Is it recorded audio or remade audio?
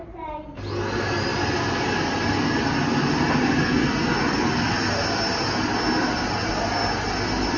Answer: recorded